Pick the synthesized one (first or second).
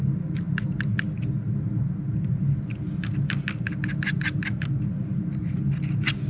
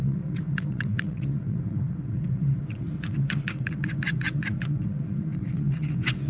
second